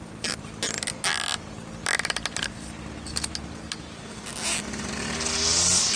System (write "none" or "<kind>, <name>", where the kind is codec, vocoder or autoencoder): none